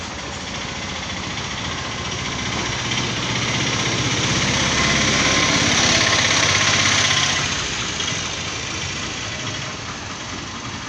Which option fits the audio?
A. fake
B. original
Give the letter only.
B